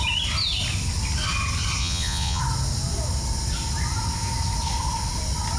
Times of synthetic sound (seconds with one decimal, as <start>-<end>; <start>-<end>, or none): 1.8-2.4